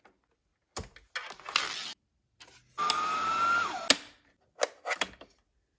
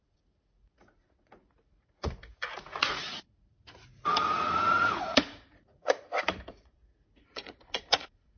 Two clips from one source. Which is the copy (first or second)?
second